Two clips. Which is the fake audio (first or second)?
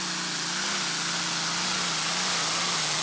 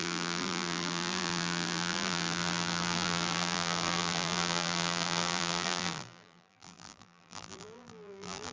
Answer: second